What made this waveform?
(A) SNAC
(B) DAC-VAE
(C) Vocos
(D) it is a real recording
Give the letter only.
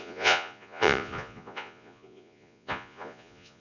C